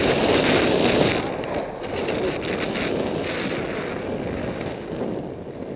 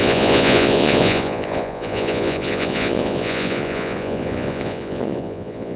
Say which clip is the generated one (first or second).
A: second